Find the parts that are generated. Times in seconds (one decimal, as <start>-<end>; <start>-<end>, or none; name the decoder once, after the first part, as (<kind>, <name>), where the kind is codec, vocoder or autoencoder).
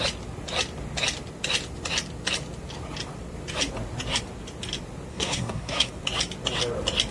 5.1-5.9 (codec, SNAC)